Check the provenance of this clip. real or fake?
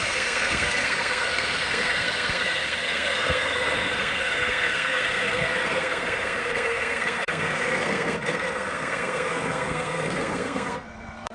fake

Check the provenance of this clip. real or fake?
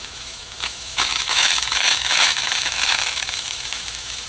fake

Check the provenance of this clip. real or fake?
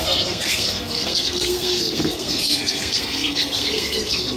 fake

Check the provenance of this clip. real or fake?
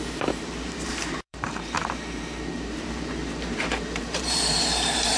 fake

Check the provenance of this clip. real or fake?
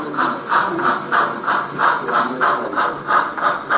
real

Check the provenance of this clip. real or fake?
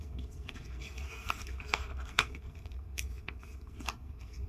fake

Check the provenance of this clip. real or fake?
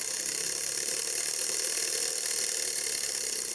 real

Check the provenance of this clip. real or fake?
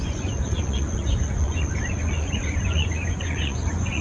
fake